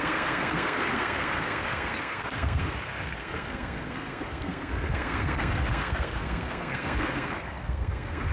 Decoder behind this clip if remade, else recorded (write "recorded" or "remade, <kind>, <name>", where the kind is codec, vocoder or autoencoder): remade, codec, SNAC